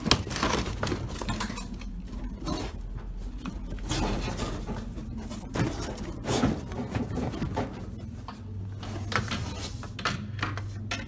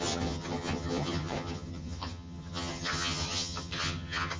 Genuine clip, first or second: first